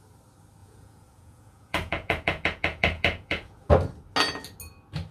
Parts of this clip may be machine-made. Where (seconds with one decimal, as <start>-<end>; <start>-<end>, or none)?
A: 0.6-3.7